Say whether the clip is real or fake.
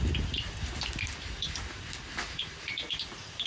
real